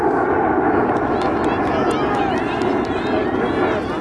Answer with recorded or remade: recorded